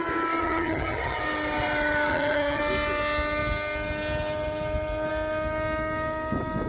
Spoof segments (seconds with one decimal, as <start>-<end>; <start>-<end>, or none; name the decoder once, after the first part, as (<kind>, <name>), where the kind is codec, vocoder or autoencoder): 0.4-1.2 (vocoder, HiFi-GAN); 2.1-2.6